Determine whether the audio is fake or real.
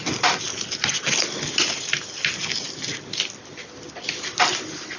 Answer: real